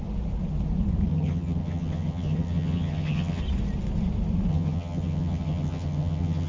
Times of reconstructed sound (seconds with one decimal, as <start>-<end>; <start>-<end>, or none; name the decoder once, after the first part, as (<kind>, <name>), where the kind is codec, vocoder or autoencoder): 1.1-3.4 (vocoder, HiFi-GAN); 4.5-6.5